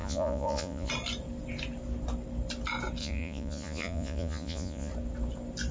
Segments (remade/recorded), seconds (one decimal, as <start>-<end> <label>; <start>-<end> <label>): 0.0-0.9 remade; 0.9-3.0 recorded; 3.0-4.9 remade; 4.9-5.7 recorded